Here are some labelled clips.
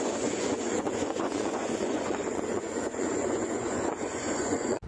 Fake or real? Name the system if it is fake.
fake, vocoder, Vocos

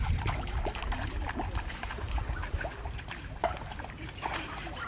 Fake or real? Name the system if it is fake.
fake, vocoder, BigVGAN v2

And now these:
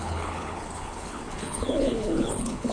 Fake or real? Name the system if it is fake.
fake, codec, HILCodec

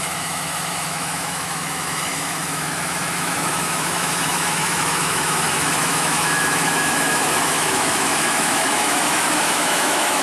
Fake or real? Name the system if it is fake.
fake, autoencoder, DAC-VAE